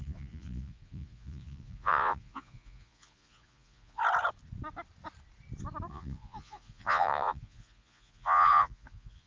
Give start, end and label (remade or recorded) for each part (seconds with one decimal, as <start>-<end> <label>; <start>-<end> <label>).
0.0-4.0 remade; 4.0-5.9 recorded; 5.9-9.3 remade